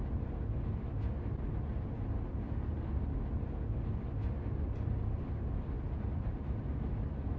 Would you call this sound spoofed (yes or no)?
no